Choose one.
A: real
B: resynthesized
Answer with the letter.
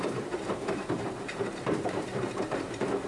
B